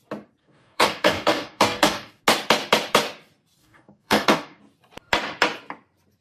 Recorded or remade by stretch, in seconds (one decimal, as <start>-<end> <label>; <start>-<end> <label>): 0.0-0.4 recorded; 0.4-2.2 remade; 2.2-3.6 recorded; 3.6-4.6 remade; 4.6-6.2 recorded